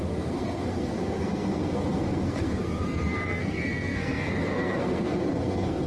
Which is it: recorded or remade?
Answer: remade